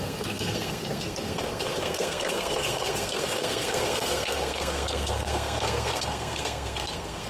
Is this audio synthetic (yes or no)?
yes